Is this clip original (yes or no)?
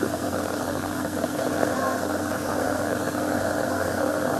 no